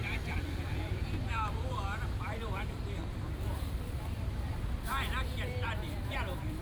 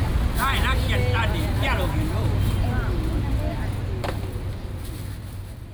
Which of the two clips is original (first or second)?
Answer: second